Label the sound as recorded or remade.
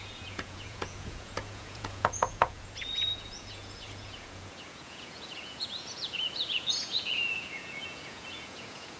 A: remade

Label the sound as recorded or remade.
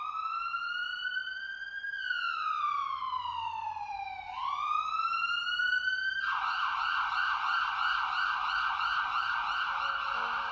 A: recorded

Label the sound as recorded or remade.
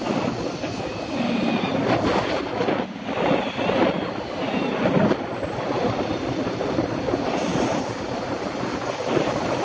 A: recorded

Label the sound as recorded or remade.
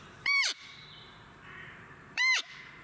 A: remade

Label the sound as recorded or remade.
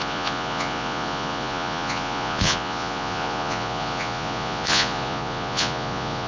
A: remade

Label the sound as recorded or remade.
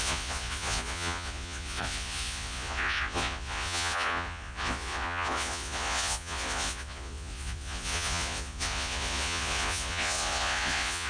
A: remade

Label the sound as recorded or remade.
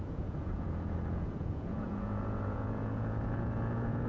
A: remade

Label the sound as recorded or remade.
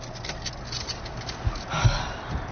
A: recorded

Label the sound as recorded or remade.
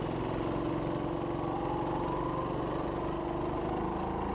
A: recorded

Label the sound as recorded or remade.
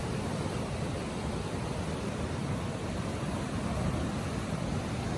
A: remade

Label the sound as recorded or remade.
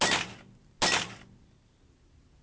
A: recorded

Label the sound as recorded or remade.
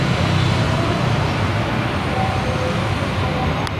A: recorded